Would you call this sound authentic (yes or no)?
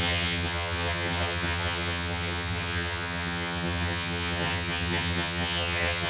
no